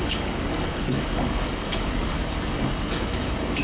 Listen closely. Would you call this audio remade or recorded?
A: remade